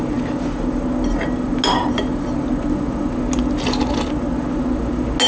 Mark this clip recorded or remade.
recorded